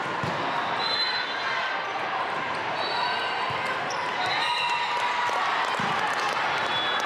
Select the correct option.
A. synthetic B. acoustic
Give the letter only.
B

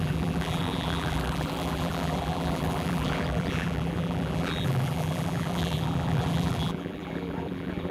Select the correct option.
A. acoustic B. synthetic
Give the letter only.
B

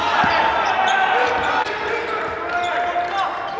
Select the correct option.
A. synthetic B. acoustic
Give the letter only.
B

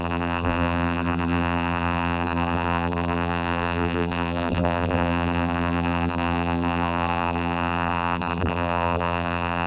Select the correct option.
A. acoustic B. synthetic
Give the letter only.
B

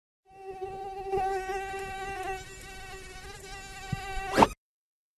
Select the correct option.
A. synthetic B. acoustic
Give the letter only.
B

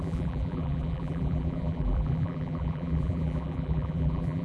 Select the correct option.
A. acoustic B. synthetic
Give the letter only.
B